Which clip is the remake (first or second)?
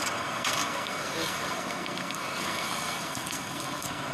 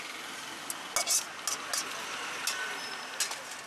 first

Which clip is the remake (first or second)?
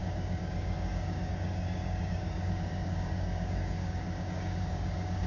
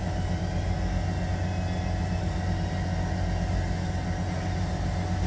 first